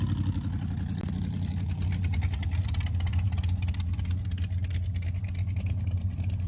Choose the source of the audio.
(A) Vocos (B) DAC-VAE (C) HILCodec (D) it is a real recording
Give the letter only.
D